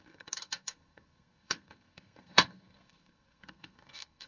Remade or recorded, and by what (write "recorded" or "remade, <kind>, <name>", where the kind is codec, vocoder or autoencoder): remade, codec, SNAC